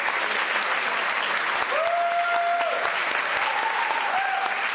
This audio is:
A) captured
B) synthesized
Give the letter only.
A